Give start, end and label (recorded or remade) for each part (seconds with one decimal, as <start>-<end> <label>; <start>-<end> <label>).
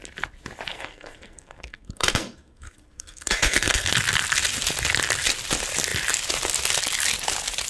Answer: 0.0-0.7 recorded; 0.7-3.9 remade; 3.9-7.7 recorded